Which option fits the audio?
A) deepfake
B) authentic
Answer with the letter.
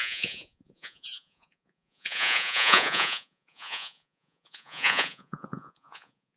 A